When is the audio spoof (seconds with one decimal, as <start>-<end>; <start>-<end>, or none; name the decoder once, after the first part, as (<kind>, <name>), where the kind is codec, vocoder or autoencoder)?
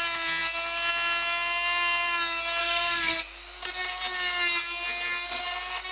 2.6-3.2 (codec, SNAC)